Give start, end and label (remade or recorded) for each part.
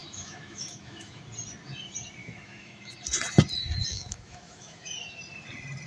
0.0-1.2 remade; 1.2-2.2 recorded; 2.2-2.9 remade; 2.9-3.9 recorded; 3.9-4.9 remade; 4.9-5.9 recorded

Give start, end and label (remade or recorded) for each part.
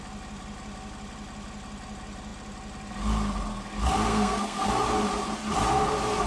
0.0-4.1 recorded; 4.1-4.7 remade; 4.7-6.3 recorded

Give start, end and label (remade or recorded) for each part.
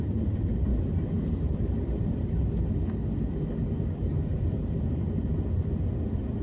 0.0-0.7 recorded; 0.7-2.5 remade; 2.5-4.3 recorded; 4.3-5.3 remade; 5.3-6.4 recorded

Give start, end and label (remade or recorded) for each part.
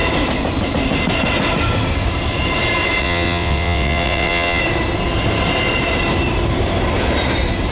0.0-3.0 recorded; 3.0-4.6 remade; 4.6-7.7 recorded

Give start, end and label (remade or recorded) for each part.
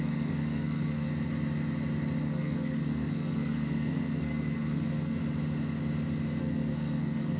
0.0-1.1 remade; 1.1-2.2 recorded; 2.2-5.2 remade; 5.2-6.4 recorded; 6.4-7.4 remade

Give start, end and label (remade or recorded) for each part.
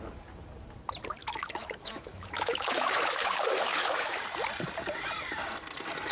0.0-1.2 recorded; 1.2-4.2 remade; 4.2-6.1 recorded